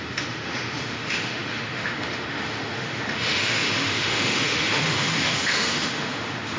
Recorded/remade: remade